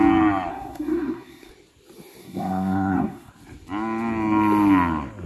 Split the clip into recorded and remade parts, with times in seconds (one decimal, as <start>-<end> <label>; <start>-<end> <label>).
0.0-0.5 recorded; 0.5-1.5 remade; 1.5-2.2 recorded; 2.2-3.3 remade; 3.3-5.3 recorded